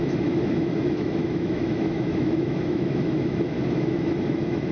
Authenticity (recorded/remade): remade